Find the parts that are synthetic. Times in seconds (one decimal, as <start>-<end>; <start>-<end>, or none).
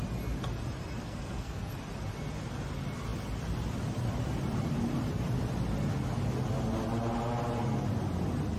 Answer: 1.0-1.7